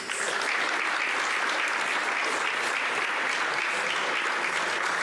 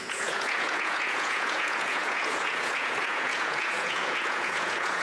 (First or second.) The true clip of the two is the first